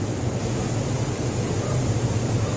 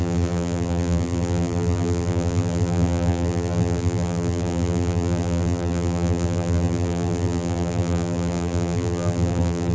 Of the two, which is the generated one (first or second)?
second